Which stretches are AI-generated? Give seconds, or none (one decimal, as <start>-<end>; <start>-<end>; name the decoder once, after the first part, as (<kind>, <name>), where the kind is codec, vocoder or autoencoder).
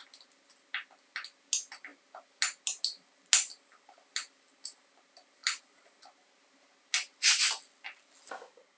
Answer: none